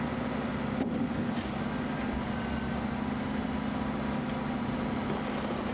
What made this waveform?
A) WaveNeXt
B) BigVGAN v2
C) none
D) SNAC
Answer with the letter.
C